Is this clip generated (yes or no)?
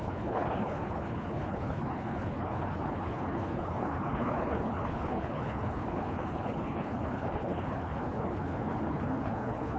yes